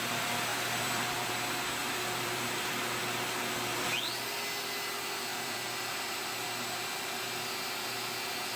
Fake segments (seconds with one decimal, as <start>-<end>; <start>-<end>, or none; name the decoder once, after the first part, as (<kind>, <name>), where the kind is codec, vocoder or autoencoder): 0.5-1.3 (vocoder, BigVGAN v2); 1.8-3.0; 5.3-6.9